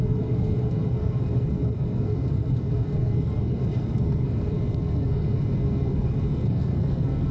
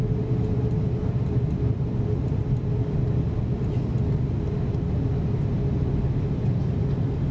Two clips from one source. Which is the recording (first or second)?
second